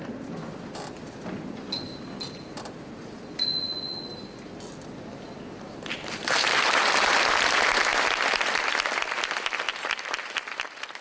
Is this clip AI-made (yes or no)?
no